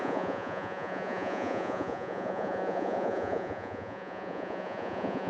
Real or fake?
fake